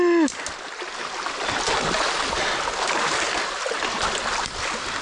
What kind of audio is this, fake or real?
real